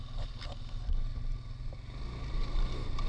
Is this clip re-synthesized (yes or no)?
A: no